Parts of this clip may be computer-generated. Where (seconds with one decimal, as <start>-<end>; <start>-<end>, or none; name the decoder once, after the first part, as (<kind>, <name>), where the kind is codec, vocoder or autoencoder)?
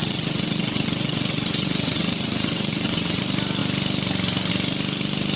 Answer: 0.0-3.2 (vocoder, WaveNeXt)